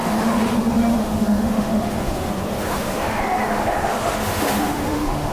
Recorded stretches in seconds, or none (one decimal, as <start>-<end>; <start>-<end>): none